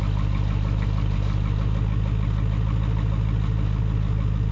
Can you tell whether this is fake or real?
real